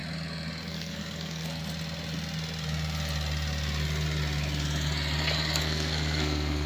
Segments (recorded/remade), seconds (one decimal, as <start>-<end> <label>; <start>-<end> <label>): 0.0-0.7 recorded; 0.7-1.6 remade; 1.6-5.6 recorded; 5.6-6.7 remade